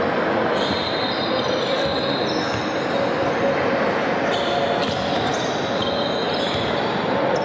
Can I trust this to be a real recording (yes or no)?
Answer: yes